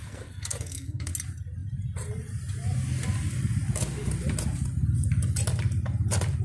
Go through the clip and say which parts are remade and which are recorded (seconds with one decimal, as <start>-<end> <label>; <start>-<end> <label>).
0.0-1.1 remade; 1.1-6.4 recorded

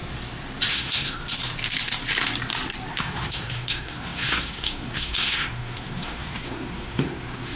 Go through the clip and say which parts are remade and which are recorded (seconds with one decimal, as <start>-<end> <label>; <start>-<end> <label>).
0.0-0.7 recorded; 0.7-1.2 remade; 1.2-2.9 recorded; 2.9-7.6 remade

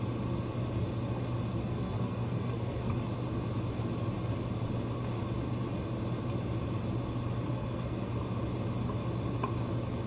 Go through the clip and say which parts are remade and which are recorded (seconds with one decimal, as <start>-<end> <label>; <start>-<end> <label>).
0.0-1.6 recorded; 1.6-2.9 remade; 2.9-7.5 recorded; 7.5-8.1 remade; 8.1-10.1 recorded

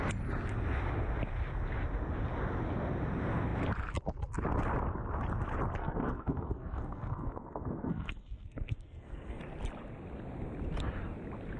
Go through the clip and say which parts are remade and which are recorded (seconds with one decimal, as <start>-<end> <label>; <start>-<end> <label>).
0.0-5.8 recorded; 5.8-9.4 remade; 9.4-11.6 recorded

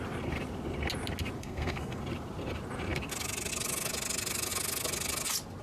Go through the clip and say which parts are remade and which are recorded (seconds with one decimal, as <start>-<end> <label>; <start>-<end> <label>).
0.0-1.4 recorded; 1.4-2.0 remade; 2.0-5.6 recorded